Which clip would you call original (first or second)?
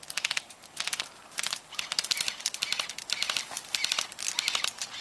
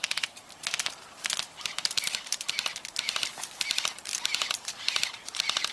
first